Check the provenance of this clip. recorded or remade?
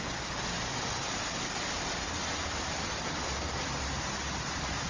recorded